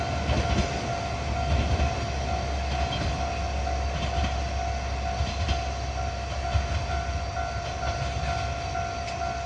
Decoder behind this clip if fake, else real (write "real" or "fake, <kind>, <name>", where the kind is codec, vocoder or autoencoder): real